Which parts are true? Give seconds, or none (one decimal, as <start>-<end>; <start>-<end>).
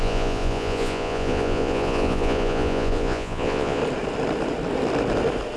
3.8-5.6